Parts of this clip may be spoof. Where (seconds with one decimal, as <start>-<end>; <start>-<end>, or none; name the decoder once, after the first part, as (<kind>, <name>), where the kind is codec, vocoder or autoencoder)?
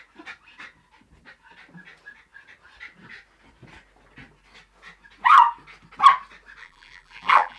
6.6-7.6 (vocoder, BigVGAN v2)